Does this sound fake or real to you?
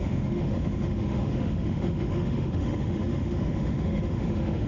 fake